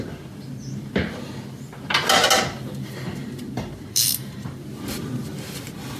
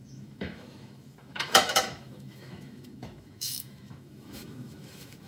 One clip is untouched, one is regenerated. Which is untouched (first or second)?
first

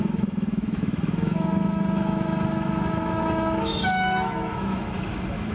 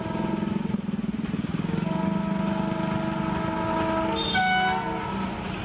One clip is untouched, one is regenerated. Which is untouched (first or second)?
second